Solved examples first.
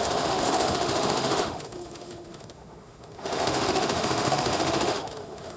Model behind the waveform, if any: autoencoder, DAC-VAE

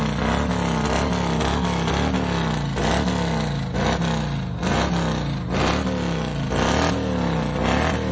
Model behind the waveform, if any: none